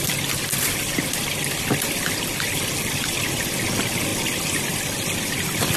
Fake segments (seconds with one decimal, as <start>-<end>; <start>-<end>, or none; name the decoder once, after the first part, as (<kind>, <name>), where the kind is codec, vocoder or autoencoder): none